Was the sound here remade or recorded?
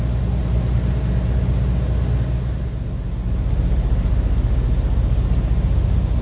recorded